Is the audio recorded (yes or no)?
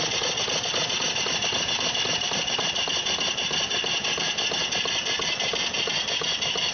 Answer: yes